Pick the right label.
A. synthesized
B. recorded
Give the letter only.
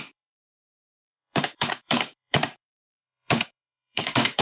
A